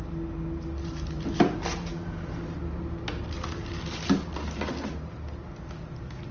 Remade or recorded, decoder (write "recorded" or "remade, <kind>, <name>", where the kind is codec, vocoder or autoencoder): recorded